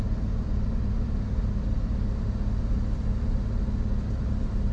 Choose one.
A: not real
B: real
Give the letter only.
B